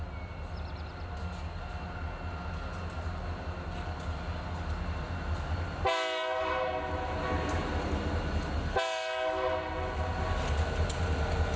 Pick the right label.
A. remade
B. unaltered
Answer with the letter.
B